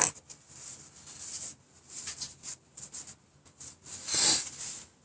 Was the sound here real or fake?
real